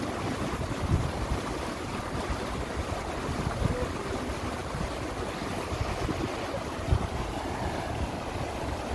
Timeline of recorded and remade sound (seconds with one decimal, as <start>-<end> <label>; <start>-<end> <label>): 0.0-8.9 recorded